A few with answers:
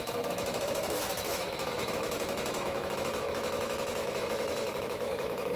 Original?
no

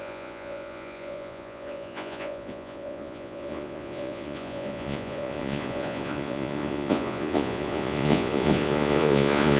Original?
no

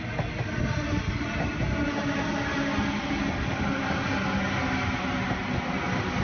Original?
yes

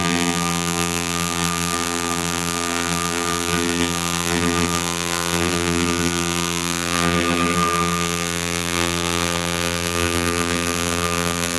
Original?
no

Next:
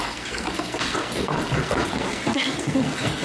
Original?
no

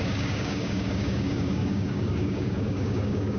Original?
no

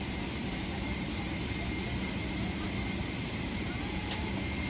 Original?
no